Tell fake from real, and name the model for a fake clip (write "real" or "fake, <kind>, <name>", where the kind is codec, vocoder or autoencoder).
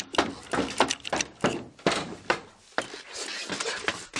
real